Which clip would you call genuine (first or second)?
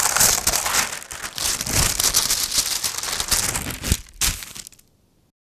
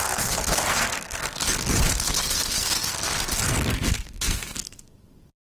first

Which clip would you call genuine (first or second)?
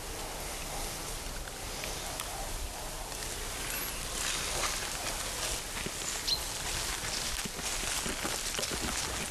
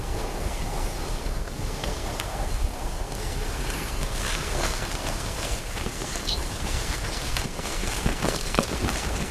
first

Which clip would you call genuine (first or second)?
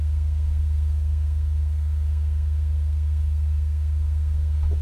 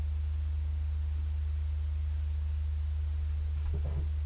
second